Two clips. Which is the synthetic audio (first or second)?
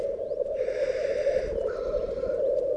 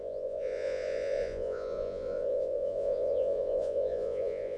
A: second